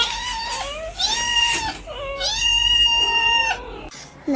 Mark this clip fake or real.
real